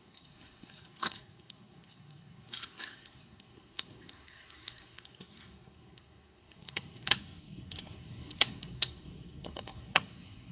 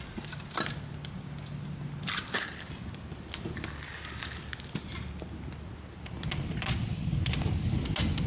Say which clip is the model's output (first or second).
first